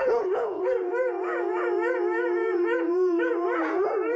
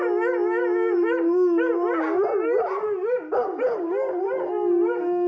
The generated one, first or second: first